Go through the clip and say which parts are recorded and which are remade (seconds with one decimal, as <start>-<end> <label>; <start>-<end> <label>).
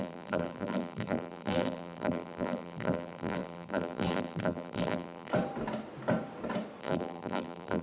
0.0-5.3 remade; 5.3-6.8 recorded; 6.8-7.8 remade